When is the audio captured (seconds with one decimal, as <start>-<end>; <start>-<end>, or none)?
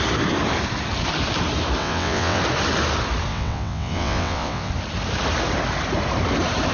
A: 0.0-1.8; 2.4-3.3; 4.7-6.7